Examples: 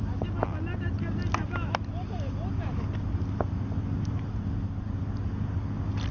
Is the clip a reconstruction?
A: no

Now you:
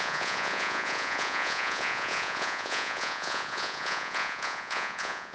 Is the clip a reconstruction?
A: yes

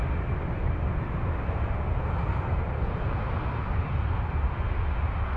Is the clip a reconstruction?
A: no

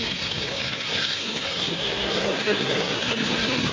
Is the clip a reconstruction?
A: yes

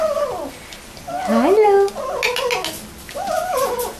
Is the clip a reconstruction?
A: no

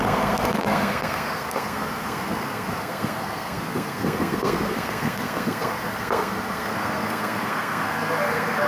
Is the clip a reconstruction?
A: yes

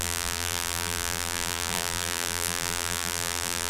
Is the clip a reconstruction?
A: yes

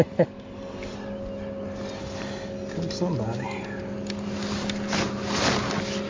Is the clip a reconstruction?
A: no